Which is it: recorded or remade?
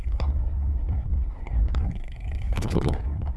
remade